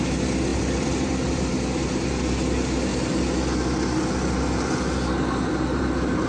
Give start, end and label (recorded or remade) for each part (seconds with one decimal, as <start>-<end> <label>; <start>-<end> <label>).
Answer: 0.0-0.5 recorded; 0.5-1.5 remade; 1.5-6.3 recorded